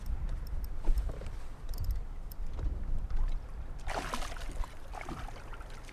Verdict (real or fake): fake